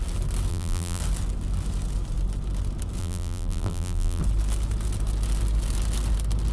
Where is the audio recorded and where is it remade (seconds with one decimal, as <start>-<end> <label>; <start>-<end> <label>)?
0.0-0.5 recorded; 0.5-1.0 remade; 1.0-3.0 recorded; 3.0-4.2 remade; 4.2-6.5 recorded

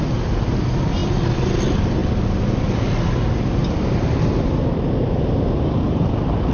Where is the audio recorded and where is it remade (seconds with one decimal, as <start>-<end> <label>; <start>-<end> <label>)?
0.0-6.5 recorded